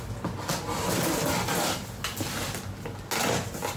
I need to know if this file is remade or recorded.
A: recorded